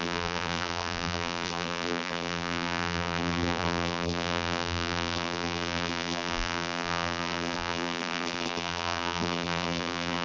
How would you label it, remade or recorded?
remade